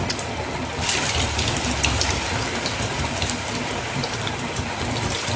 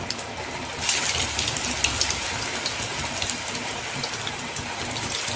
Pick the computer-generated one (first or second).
first